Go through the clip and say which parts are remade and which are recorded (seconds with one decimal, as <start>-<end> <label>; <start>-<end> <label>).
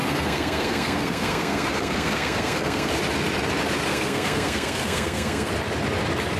0.0-2.9 remade; 2.9-3.9 recorded; 3.9-5.5 remade; 5.5-6.4 recorded